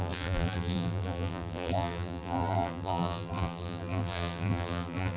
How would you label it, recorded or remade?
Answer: remade